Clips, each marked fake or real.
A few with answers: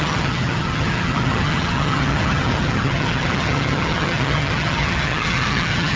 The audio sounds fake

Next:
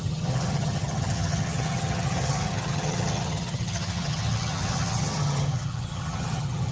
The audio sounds fake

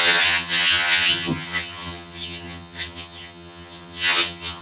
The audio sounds fake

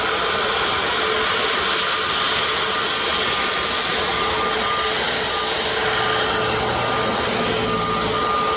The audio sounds real